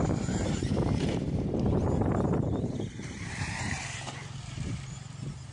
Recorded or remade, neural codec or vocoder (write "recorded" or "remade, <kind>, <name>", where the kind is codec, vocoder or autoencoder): remade, vocoder, BigVGAN v2